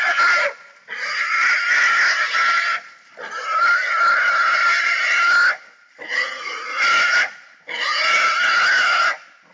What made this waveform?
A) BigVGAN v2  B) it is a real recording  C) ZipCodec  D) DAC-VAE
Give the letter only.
B